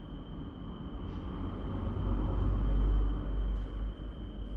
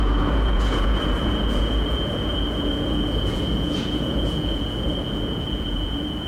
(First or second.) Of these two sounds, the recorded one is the first